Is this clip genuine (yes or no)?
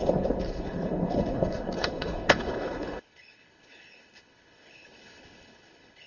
no